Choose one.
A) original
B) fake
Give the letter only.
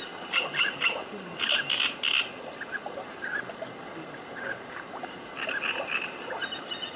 A